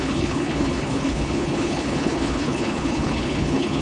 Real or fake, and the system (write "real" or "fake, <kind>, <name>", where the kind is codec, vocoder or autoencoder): fake, codec, HILCodec